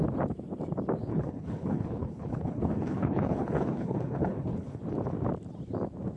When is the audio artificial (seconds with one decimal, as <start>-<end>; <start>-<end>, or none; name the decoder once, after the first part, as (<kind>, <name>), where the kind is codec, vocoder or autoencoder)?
1.1-4.8 (codec, HILCodec)